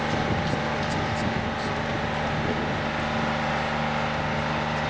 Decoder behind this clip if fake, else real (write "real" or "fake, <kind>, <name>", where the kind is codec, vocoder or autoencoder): real